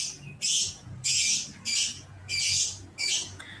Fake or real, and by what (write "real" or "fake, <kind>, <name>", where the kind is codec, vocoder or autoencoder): fake, vocoder, Vocos